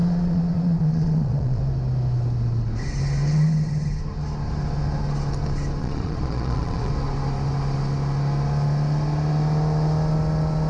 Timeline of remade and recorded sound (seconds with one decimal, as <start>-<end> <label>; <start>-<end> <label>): 0.0-1.6 remade; 1.6-5.8 recorded; 5.8-6.9 remade; 6.9-10.7 recorded